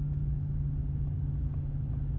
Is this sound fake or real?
real